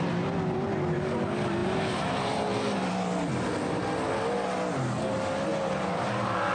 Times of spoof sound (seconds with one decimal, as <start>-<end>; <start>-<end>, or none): 1.6-2.9; 5.5-6.5